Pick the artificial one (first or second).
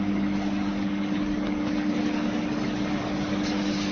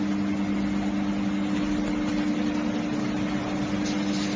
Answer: first